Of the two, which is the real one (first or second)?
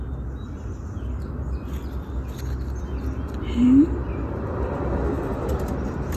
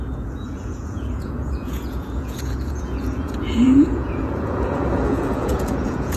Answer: first